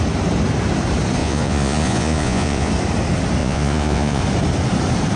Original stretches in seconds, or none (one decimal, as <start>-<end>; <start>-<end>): 0.0-1.2; 2.7-3.4; 4.2-5.2